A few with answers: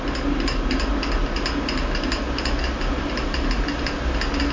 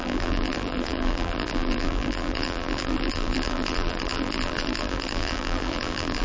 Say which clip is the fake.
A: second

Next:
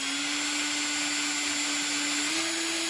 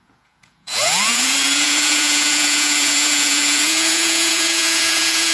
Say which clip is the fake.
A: second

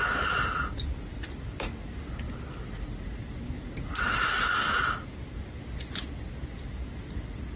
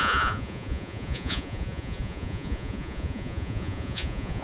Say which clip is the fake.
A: second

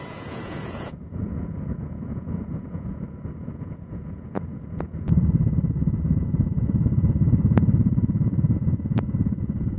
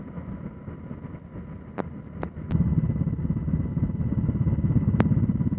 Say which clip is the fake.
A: first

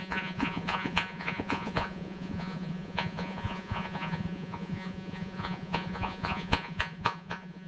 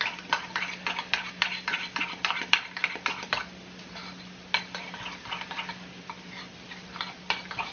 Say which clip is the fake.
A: first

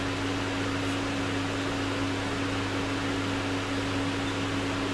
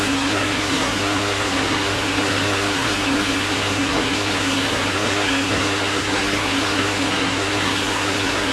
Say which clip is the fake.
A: second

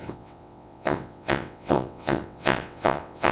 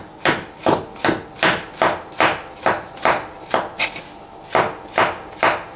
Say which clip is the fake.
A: first